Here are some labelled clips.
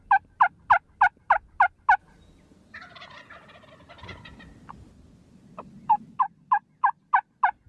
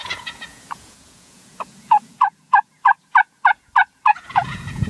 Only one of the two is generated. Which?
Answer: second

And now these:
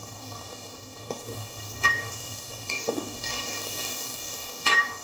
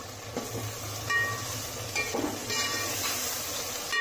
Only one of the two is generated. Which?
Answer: first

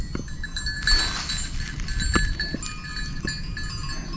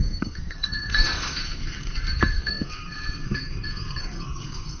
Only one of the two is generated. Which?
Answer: second